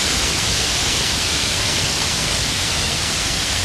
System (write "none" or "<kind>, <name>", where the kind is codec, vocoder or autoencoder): codec, SNAC